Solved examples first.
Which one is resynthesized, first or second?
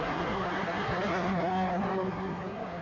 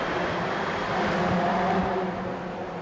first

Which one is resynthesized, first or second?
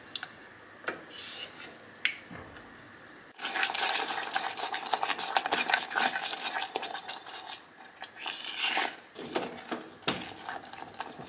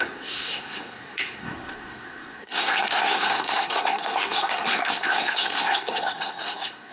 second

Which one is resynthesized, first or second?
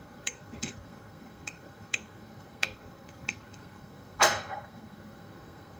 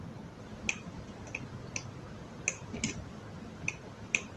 first